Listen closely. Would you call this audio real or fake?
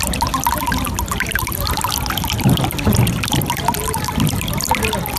real